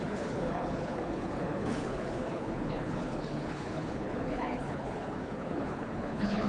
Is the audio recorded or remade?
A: remade